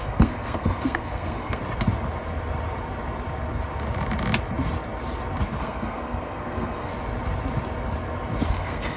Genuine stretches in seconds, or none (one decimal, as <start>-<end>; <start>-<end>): 1.6-5.6; 6.9-8.5